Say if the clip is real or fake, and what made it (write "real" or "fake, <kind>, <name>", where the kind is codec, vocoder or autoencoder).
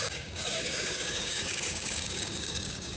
fake, codec, DAC